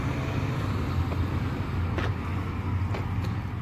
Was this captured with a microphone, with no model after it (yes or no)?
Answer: yes